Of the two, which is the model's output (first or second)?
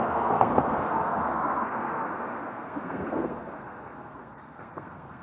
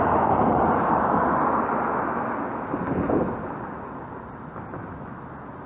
first